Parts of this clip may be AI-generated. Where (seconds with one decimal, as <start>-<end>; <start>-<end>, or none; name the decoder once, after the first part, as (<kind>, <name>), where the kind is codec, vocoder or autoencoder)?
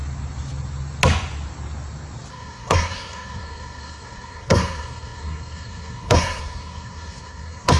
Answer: 2.3-7.8 (codec, SNAC)